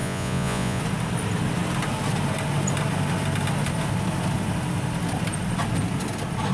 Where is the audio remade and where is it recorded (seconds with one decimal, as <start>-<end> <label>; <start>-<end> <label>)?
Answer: 0.0-0.8 remade; 0.8-6.5 recorded